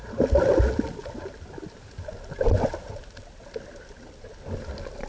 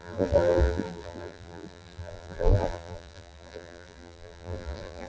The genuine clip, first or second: first